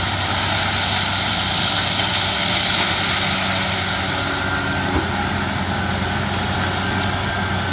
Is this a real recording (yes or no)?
yes